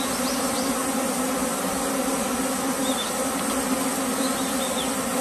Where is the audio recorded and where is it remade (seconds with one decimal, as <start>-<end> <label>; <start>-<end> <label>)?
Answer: 0.0-5.2 recorded